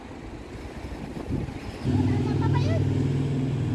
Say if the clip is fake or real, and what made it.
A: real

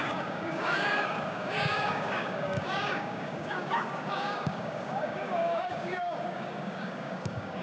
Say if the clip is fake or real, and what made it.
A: fake, codec, DAC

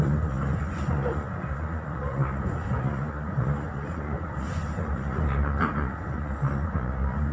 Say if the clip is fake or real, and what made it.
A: fake, vocoder, Vocos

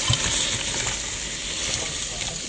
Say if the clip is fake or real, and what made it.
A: fake, vocoder, BigVGAN v2